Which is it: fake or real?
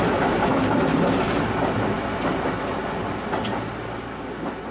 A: real